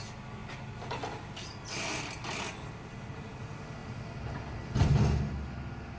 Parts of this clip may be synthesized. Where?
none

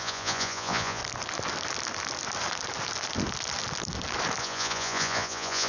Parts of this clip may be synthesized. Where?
0.0-1.0; 4.4-5.7

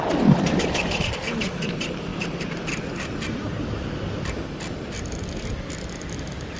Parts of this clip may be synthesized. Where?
none

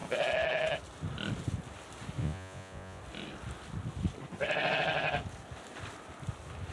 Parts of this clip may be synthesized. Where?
2.2-3.0

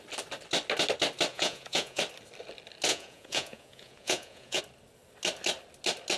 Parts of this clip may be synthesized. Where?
1.3-2.0; 2.9-4.6